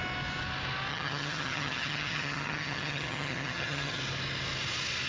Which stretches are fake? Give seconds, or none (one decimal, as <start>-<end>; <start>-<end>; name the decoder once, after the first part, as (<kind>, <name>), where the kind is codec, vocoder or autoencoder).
0.9-4.0 (vocoder, HiFi-GAN)